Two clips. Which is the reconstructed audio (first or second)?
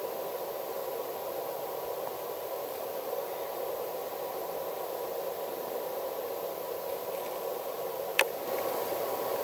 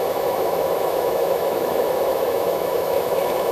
second